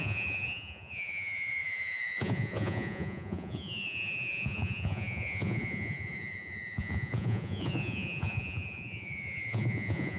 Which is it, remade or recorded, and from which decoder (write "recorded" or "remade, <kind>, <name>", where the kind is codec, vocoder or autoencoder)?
remade, vocoder, Vocos